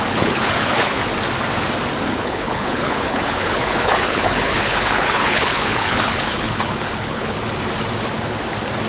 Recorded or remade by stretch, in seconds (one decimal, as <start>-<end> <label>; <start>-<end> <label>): 0.0-1.0 remade; 1.0-2.1 recorded; 2.1-7.4 remade; 7.4-8.9 recorded